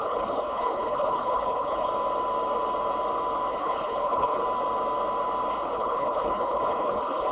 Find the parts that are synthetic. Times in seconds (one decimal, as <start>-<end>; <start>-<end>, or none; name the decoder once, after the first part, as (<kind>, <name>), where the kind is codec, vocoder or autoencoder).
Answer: 0.0-1.9 (codec, HILCodec); 3.5-4.4; 5.5-7.3